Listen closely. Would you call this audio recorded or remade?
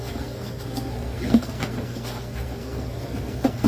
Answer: remade